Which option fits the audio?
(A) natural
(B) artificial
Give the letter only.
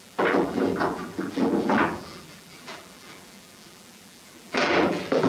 B